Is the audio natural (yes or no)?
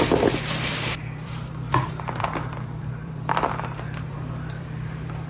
no